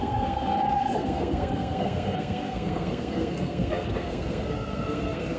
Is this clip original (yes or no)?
no